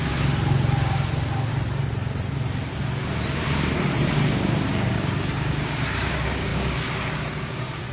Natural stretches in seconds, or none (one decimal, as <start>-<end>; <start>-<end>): 0.0-4.7